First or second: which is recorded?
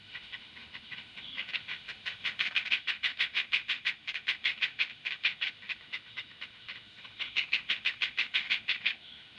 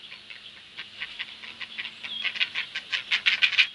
second